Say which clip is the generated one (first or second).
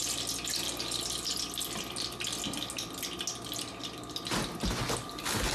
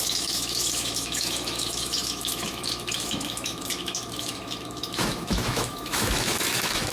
second